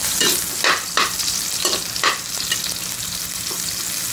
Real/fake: real